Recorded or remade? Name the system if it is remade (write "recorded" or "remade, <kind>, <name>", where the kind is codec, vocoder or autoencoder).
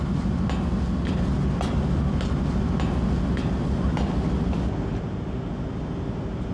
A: recorded